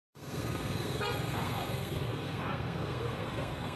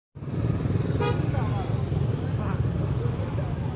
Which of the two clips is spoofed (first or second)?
first